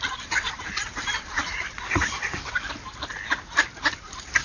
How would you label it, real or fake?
real